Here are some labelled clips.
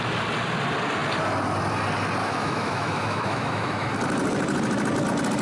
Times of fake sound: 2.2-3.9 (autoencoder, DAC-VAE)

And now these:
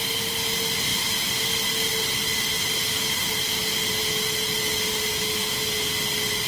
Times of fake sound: none

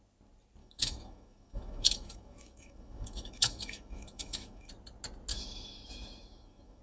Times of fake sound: 0.6-4.7 (autoencoder, DAC-VAE); 5.3-6.8

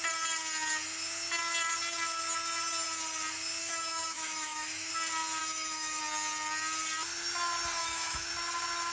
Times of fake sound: 3.6-4.9 (autoencoder, DAC-VAE); 5.4-6.0; 7.8-8.3